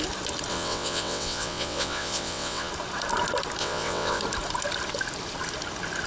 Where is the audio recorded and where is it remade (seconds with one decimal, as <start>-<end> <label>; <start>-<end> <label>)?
0.0-0.5 recorded; 0.5-2.7 remade; 2.7-3.6 recorded; 3.6-4.2 remade; 4.2-6.1 recorded